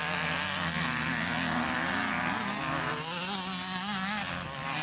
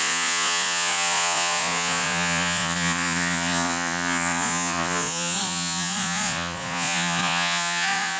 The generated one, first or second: second